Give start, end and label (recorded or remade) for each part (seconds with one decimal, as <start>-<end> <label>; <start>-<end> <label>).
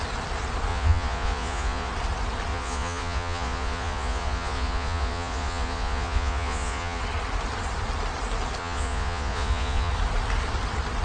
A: 0.0-0.7 recorded; 0.7-1.9 remade; 1.9-2.5 recorded; 2.5-7.0 remade; 7.0-8.6 recorded; 8.6-9.9 remade; 9.9-11.0 recorded